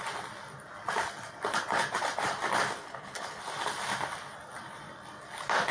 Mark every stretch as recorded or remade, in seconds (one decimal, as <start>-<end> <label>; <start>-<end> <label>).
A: 0.0-2.8 recorded; 2.8-3.4 remade; 3.4-5.7 recorded